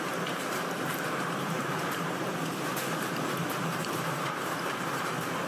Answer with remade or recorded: remade